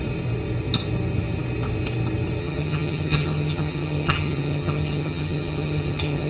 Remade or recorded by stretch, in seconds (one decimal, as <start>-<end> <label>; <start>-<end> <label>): 0.0-2.4 recorded; 2.4-6.3 remade